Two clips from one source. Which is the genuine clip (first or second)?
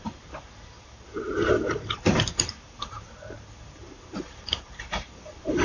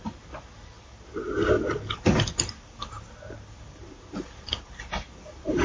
second